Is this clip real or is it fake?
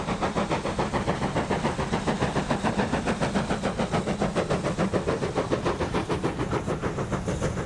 real